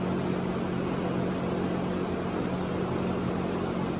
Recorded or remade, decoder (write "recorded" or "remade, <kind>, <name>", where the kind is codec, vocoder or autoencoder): recorded